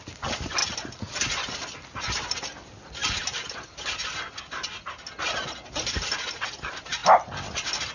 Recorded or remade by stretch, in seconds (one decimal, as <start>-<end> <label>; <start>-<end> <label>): 0.0-7.9 recorded

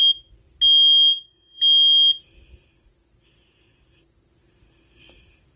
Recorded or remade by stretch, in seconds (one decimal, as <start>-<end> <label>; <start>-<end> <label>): 0.0-1.1 recorded; 1.1-1.6 remade; 1.6-5.6 recorded

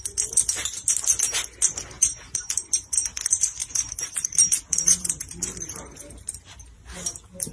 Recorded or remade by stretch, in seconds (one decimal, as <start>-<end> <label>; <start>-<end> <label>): 0.0-3.6 recorded; 3.6-6.6 remade; 6.6-7.5 recorded

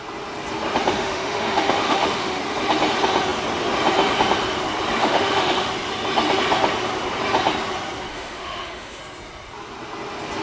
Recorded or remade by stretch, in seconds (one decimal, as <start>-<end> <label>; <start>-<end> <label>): 0.0-0.9 recorded; 0.9-2.4 remade; 2.4-5.0 recorded; 5.0-5.7 remade; 5.7-8.1 recorded; 8.1-9.0 remade; 9.0-10.4 recorded

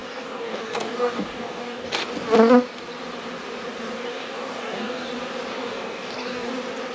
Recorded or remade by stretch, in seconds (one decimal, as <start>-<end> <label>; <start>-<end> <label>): 0.0-2.1 remade; 2.1-4.1 recorded; 4.1-5.1 remade; 5.1-5.5 recorded; 5.5-6.5 remade; 6.5-6.9 recorded

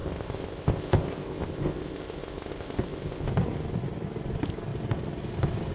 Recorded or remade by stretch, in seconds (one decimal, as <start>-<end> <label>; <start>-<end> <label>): 0.0-3.3 remade; 3.3-5.7 recorded

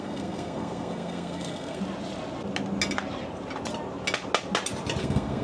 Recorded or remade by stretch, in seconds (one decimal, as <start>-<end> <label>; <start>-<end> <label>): 0.0-1.8 remade; 1.8-5.0 recorded; 5.0-5.4 remade

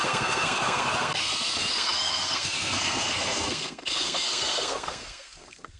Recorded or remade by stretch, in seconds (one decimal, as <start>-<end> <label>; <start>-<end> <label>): 0.0-5.8 remade